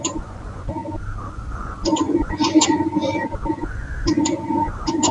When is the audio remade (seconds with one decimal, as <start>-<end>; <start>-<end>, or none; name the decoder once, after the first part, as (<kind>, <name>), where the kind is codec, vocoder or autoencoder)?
0.0-0.8 (vocoder, Vocos); 1.3-3.0; 3.5-5.1